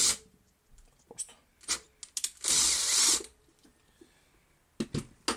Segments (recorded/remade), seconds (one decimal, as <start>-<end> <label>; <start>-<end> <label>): 0.0-5.4 recorded